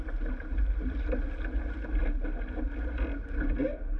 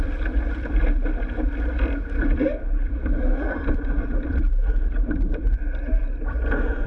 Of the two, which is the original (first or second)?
first